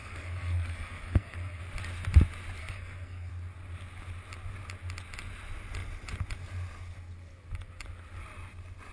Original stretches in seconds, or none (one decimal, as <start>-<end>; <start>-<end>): 1.6-2.6; 3.3-8.9